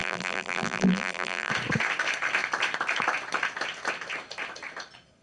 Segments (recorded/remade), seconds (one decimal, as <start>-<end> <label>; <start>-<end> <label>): 0.0-1.5 remade; 1.5-5.2 recorded